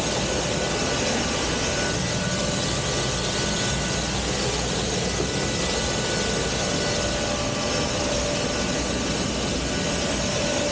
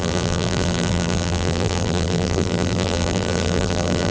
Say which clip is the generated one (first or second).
second